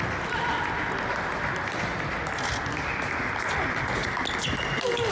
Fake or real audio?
real